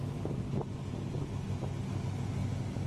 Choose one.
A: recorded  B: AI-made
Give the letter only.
A